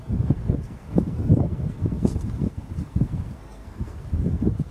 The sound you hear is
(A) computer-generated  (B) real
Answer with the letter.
A